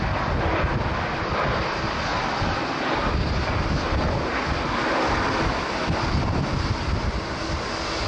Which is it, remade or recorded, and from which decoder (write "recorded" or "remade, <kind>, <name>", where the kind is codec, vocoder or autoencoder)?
recorded